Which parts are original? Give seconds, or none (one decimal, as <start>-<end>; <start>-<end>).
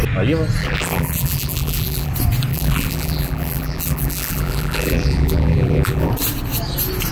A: 0.0-0.6; 2.1-2.5; 6.1-7.1